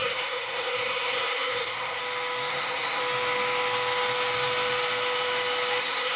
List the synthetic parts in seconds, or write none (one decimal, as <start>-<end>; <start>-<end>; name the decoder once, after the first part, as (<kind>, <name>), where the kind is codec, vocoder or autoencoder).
0.0-2.0 (codec, SNAC); 2.5-3.0; 5.8-6.2